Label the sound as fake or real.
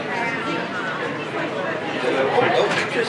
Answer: real